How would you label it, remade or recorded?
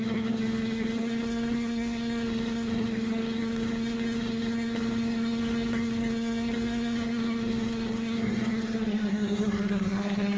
remade